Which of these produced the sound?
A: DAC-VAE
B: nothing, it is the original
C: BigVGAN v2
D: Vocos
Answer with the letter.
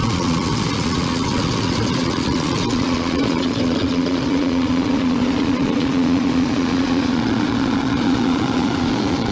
D